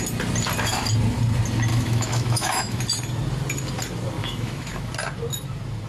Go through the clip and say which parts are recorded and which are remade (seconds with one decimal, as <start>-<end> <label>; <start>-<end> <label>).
0.0-1.7 recorded; 1.7-2.8 remade; 2.8-4.2 recorded; 4.2-4.9 remade; 4.9-5.9 recorded